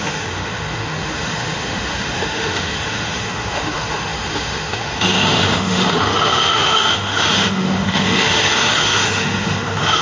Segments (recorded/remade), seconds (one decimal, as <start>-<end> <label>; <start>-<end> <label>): 0.0-10.0 remade